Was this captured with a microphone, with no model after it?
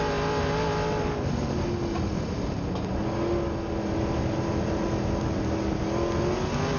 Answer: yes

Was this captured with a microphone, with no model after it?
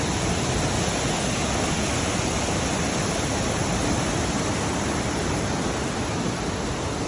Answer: yes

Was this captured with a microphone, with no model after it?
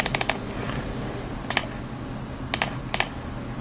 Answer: yes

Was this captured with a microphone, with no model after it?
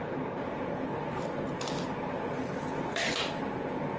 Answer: yes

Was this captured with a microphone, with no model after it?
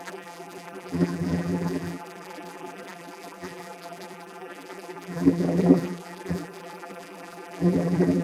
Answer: no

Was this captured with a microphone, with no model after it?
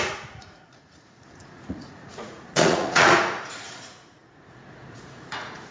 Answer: no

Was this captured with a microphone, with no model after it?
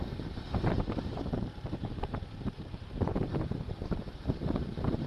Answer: no